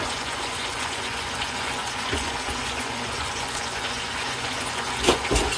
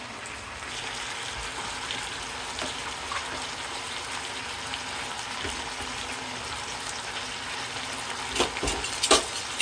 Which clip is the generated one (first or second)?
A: first